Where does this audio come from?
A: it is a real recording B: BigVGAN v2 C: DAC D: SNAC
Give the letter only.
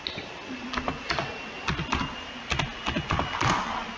A